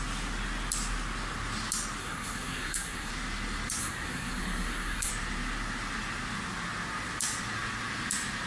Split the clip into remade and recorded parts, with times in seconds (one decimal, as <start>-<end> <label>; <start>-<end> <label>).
0.0-2.0 recorded; 2.0-3.1 remade; 3.1-3.8 recorded; 3.8-5.1 remade; 5.1-8.5 recorded